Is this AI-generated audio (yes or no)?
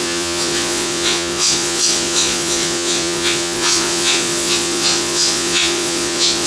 yes